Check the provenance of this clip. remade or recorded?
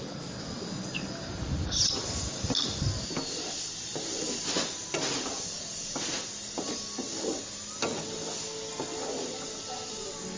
recorded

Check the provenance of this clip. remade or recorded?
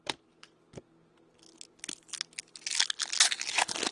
recorded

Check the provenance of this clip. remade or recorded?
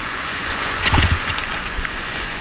remade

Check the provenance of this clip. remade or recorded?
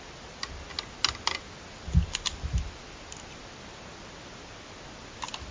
recorded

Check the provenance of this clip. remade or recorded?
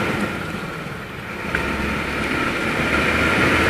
recorded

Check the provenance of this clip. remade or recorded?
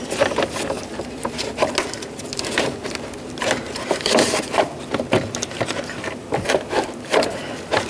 recorded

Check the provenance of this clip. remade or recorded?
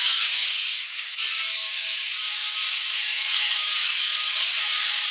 remade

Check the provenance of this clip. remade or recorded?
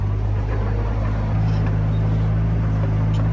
recorded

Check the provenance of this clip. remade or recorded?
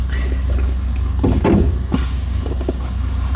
recorded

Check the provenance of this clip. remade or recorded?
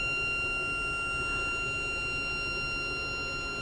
recorded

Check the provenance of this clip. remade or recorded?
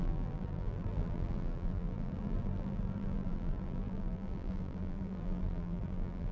remade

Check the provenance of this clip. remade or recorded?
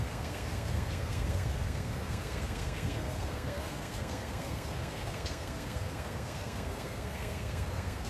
remade